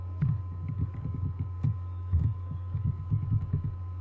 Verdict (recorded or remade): remade